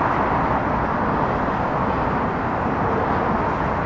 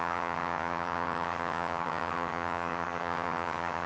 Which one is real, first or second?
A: first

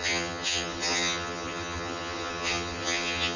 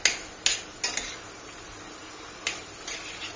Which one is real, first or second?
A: second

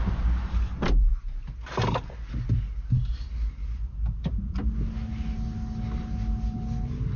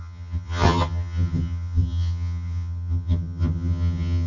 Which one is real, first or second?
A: first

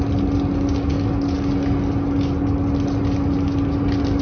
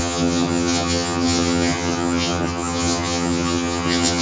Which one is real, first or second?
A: first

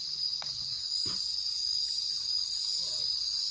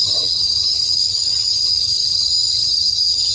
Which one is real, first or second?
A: first